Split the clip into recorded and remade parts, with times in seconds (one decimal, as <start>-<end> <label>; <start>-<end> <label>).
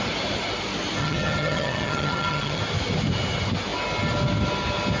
0.0-1.0 recorded; 1.0-2.6 remade; 2.6-5.0 recorded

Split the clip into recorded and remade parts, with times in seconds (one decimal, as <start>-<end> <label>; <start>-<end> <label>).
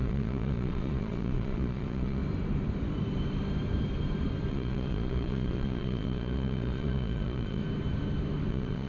0.0-2.2 remade; 2.2-4.5 recorded; 4.5-7.6 remade; 7.6-8.5 recorded; 8.5-8.9 remade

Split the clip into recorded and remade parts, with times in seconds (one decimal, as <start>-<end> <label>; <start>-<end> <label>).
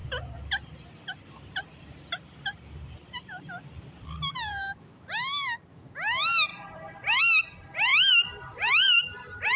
0.0-5.1 remade; 5.1-6.5 recorded; 6.5-7.2 remade; 7.2-7.9 recorded; 7.9-9.6 remade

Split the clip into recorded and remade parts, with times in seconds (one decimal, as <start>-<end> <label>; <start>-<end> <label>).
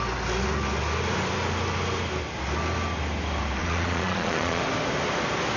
0.0-3.6 recorded; 3.6-4.6 remade; 4.6-5.6 recorded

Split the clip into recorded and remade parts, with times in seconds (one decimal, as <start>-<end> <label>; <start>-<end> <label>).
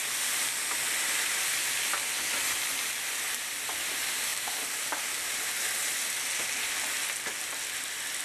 0.0-4.3 recorded; 4.3-5.0 remade; 5.0-8.2 recorded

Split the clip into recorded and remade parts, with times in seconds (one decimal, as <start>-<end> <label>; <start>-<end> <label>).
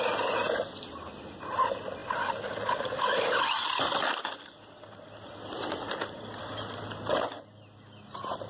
0.0-2.0 recorded; 2.0-6.9 remade; 6.9-8.5 recorded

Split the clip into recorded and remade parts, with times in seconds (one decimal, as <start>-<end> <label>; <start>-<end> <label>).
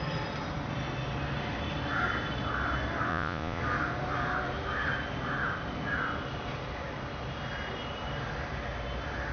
0.0-3.1 recorded; 3.1-3.6 remade; 3.6-9.3 recorded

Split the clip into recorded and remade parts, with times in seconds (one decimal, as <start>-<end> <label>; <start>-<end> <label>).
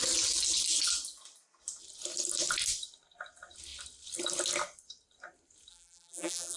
0.0-5.7 recorded; 5.7-6.6 remade